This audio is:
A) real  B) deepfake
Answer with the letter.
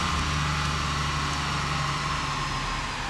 A